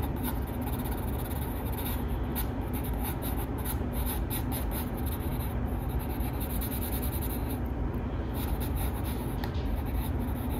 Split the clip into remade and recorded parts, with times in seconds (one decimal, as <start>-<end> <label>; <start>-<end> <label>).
0.0-10.6 recorded